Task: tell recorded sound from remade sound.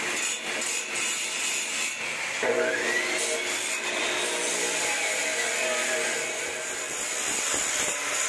recorded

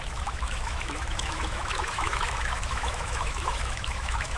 remade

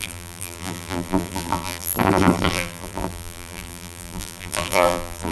remade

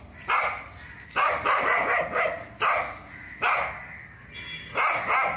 recorded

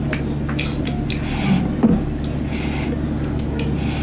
recorded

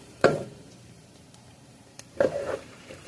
remade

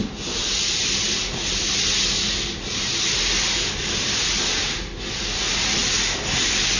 recorded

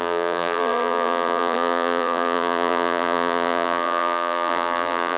remade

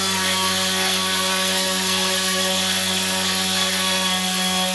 remade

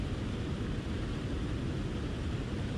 recorded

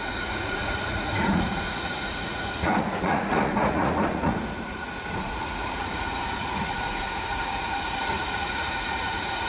remade